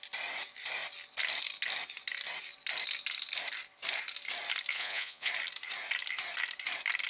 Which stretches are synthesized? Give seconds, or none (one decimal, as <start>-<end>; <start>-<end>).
4.7-5.3